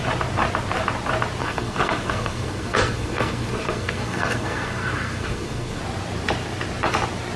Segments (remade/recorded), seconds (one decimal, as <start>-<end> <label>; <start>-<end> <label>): 0.0-1.4 recorded; 1.4-5.8 remade; 5.8-7.4 recorded